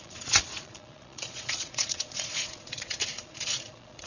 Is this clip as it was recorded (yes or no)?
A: no